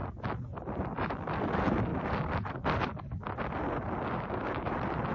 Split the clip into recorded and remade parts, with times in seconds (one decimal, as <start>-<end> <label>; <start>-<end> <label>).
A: 0.0-0.8 recorded; 0.8-1.9 remade; 1.9-5.1 recorded